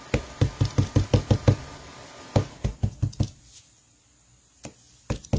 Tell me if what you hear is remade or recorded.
recorded